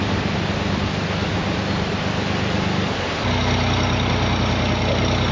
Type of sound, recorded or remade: recorded